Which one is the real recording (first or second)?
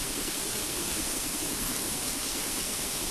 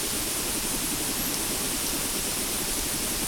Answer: second